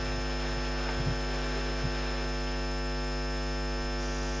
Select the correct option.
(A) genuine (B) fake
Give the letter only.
A